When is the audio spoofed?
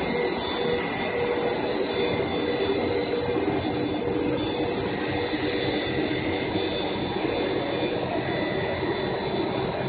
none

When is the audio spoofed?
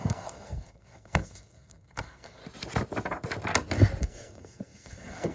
0.0-2.4 (codec, SNAC); 4.0-5.3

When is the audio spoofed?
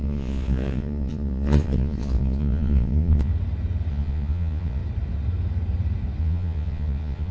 0.0-3.3 (vocoder, Vocos); 3.9-4.8; 6.2-7.3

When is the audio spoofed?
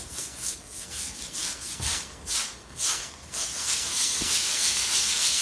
0.0-5.4 (codec, SNAC)